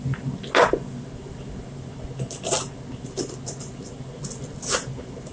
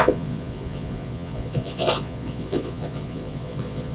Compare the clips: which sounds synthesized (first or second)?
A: second